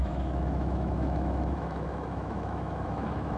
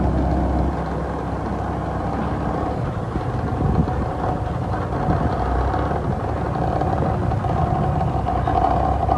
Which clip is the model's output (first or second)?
first